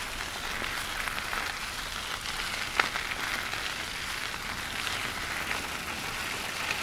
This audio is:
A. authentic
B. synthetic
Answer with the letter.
A